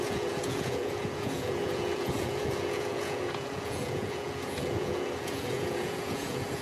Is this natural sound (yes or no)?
no